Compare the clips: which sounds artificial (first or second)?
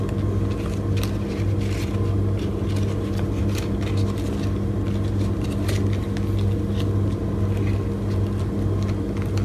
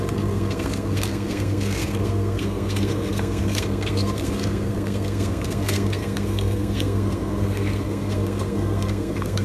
second